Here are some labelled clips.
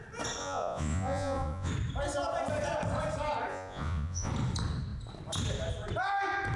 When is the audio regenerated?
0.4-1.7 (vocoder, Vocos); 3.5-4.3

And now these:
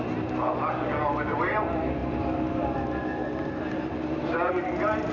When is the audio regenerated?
none

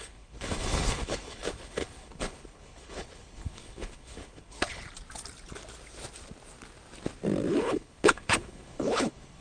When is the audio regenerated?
0.0-4.8 (codec, HILCodec); 7.6-9.4

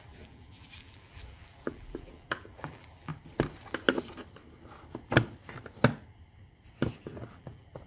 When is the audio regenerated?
0.0-3.1 (vocoder, BigVGAN v2); 7.2-7.9

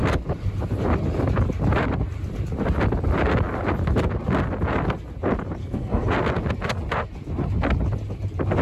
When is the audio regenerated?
5.6-6.1 (codec, SNAC)

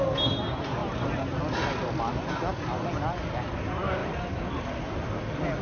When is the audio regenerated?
0.8-1.4 (vocoder, BigVGAN v2)

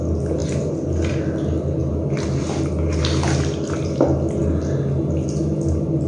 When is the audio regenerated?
none

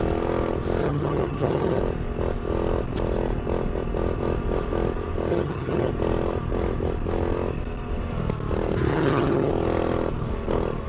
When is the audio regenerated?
0.8-1.8 (vocoder, HiFi-GAN); 5.3-5.9; 8.9-9.5